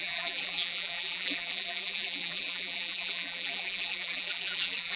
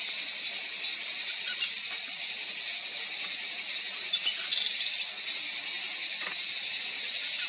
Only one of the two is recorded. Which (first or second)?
second